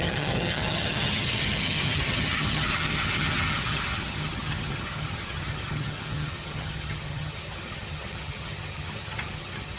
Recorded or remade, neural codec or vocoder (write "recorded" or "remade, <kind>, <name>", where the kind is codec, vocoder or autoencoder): remade, vocoder, HiFi-GAN